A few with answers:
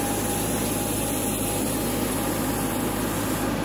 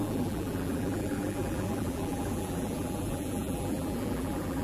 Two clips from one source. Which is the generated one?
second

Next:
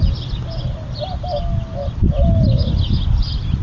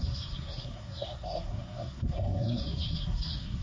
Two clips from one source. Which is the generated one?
second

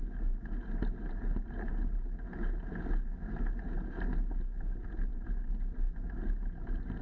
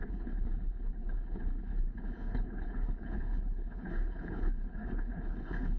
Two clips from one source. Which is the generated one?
second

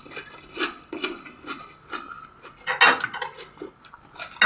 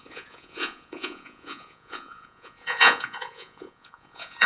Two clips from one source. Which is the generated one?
second